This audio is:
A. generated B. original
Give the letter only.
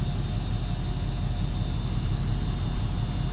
B